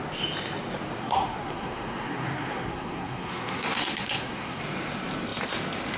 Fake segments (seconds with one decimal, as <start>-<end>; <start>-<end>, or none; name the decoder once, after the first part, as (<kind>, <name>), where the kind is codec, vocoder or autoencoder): 1.0-4.6 (codec, SNAC)